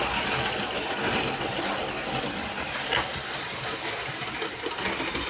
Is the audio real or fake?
real